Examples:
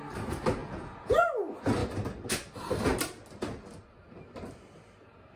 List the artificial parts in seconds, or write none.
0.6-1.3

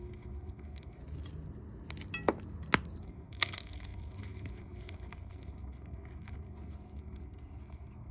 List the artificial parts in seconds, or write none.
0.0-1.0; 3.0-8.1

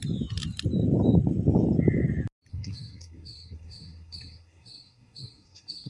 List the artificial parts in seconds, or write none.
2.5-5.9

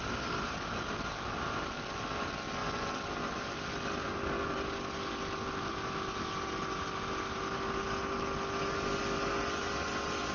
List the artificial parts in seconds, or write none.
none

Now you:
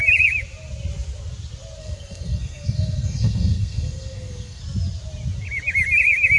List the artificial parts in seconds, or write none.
1.8-4.6

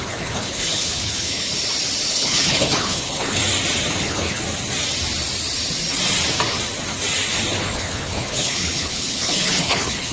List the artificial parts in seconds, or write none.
0.0-1.5; 2.1-3.4; 4.0-4.4; 7.6-10.1

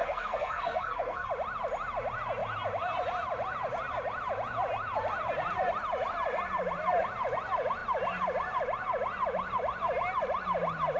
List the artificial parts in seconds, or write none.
0.0-1.3